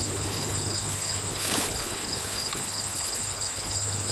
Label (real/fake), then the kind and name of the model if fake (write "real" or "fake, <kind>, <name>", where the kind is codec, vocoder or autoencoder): fake, codec, HILCodec